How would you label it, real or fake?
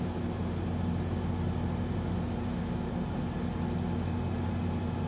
real